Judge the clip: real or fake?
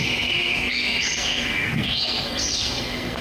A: fake